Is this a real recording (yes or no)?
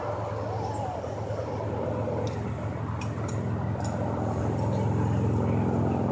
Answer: yes